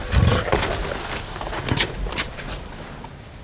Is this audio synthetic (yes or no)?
no